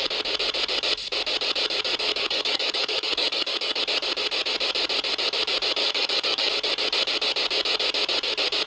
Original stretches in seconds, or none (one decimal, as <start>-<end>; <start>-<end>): 0.0-2.1; 3.8-5.8; 6.5-8.7